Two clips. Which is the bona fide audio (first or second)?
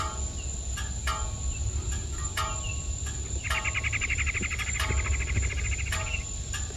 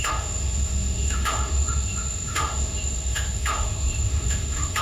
first